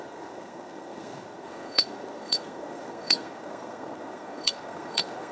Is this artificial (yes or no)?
yes